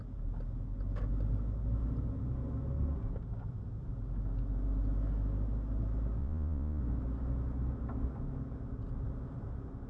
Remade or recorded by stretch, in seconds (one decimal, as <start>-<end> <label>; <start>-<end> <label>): 0.0-6.2 recorded; 6.2-6.8 remade; 6.8-9.9 recorded